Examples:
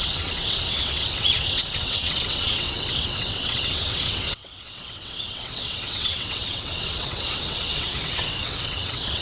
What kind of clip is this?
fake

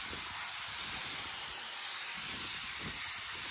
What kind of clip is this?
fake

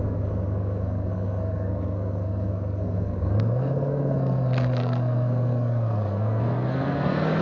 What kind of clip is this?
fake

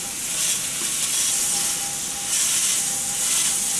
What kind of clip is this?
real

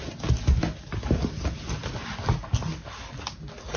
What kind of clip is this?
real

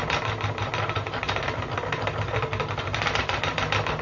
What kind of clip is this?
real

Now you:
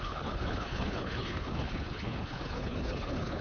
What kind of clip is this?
fake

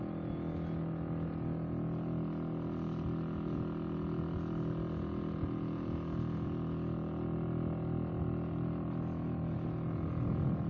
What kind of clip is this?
real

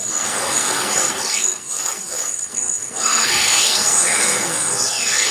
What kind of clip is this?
fake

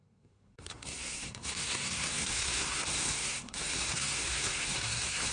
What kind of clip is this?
fake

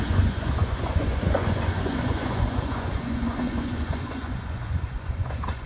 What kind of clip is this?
fake